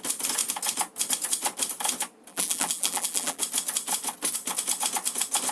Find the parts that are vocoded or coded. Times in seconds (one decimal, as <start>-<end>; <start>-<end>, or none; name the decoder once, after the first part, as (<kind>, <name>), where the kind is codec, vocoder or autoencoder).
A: 2.3-3.4 (vocoder, BigVGAN v2)